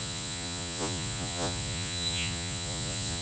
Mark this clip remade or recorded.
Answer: remade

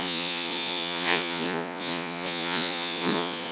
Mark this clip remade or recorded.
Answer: remade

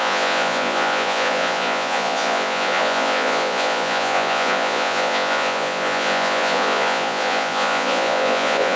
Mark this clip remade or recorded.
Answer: remade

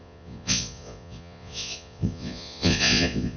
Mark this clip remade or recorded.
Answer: remade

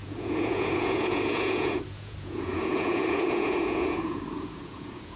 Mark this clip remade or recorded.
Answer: remade